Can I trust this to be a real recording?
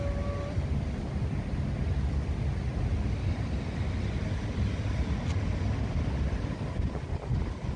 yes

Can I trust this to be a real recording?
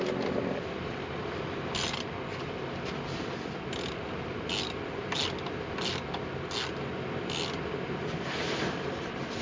yes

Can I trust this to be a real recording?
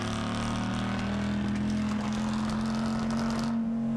yes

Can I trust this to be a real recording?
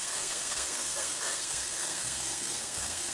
no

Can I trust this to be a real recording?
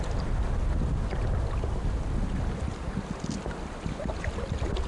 yes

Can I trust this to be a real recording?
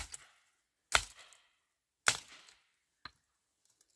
yes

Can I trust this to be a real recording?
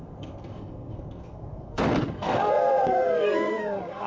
no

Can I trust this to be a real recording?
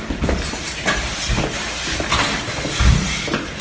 yes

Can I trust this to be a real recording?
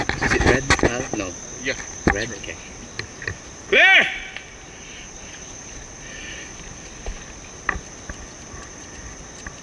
yes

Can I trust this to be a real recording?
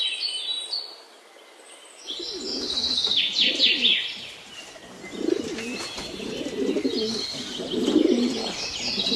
yes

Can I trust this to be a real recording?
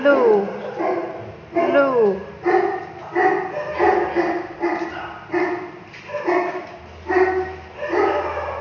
yes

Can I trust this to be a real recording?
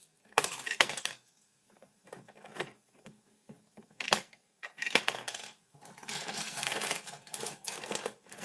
no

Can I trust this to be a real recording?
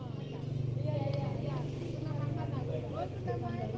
yes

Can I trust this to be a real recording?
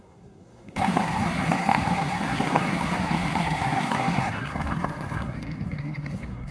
no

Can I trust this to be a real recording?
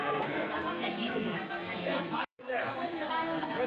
no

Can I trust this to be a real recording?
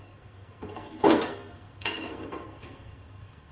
no